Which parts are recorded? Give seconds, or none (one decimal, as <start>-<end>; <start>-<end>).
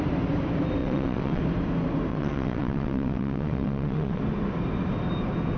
0.0-0.8; 1.4-2.1; 4.2-5.6